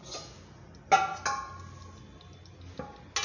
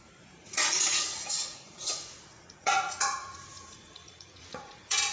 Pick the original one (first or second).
first